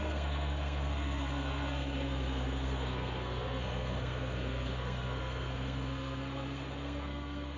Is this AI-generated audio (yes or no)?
yes